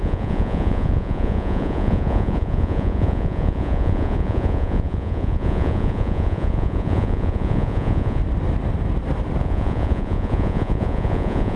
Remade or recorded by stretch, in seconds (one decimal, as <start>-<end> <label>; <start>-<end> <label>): 0.0-8.2 remade; 8.2-9.4 recorded; 9.4-11.6 remade